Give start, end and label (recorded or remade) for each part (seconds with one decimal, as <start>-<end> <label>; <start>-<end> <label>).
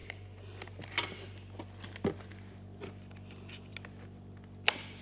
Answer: 0.0-5.0 recorded